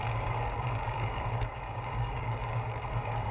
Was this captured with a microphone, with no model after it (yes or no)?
no